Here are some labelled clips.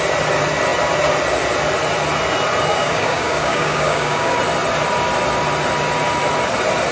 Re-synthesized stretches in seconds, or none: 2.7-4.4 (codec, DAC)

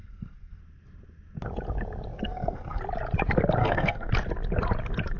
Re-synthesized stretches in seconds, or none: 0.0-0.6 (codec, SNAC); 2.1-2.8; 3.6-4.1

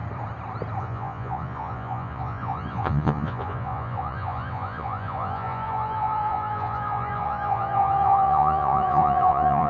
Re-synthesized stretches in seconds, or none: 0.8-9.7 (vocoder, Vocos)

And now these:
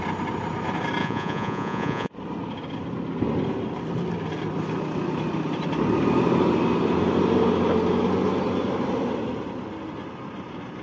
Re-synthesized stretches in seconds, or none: 1.0-2.1 (vocoder, Vocos)

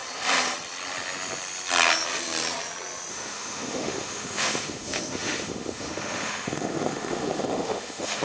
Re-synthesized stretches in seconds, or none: 3.1-8.2 (autoencoder, DAC-VAE)

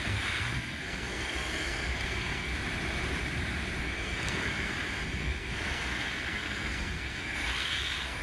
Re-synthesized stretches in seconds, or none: 0.0-2.5 (codec, SNAC); 3.8-4.7; 5.2-8.2

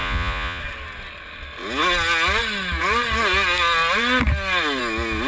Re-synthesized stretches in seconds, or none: 0.0-0.6 (vocoder, Vocos)